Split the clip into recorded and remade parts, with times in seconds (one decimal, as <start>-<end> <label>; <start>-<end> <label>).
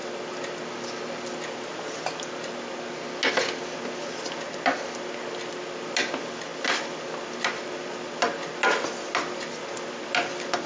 0.0-10.7 recorded